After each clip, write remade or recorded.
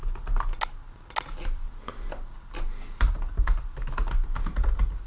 recorded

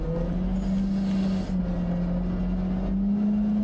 recorded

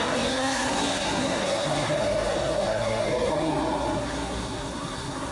remade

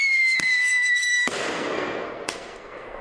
remade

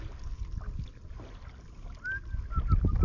recorded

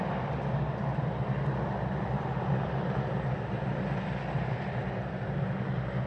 recorded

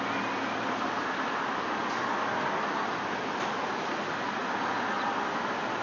recorded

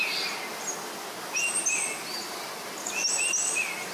recorded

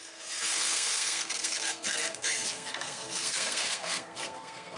remade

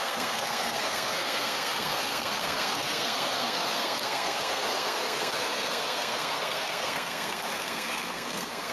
remade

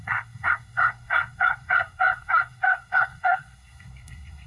remade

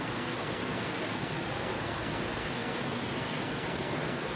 remade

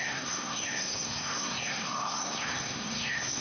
remade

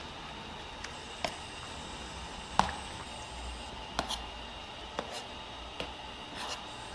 recorded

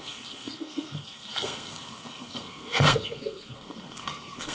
remade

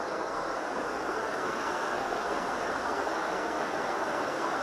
remade